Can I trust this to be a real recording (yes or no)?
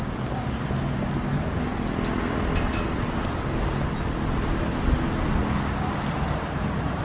yes